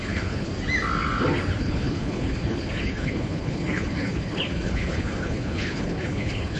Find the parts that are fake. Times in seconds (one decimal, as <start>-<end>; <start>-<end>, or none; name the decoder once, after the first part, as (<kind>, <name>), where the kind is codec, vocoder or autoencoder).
0.0-0.5 (codec, HILCodec); 1.6-6.6